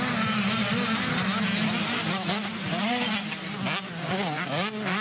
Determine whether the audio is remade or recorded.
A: recorded